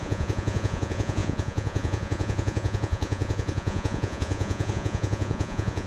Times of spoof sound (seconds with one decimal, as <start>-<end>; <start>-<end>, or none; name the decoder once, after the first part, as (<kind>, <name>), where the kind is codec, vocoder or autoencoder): 0.0-5.9 (vocoder, Vocos)

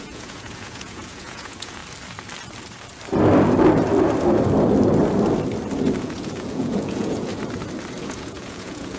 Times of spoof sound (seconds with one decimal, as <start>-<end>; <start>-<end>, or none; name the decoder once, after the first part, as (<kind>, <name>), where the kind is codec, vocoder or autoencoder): 0.0-1.8 (vocoder, Vocos); 6.0-7.3; 8.0-9.0

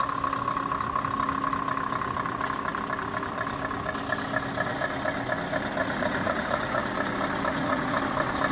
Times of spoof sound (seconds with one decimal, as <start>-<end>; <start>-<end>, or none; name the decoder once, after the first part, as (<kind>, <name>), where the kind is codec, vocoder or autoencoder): 5.8-6.8 (vocoder, Vocos); 7.5-8.0

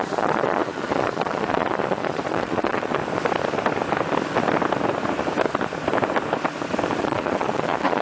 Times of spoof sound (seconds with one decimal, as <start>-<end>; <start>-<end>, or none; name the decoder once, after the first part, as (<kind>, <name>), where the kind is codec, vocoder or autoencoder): 0.0-3.0 (vocoder, Vocos); 7.0-8.0